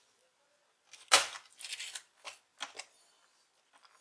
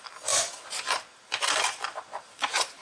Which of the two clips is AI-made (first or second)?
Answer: second